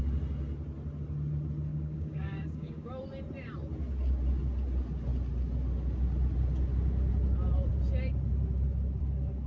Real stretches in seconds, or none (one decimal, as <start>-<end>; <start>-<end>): 0.0-1.7; 2.9-9.5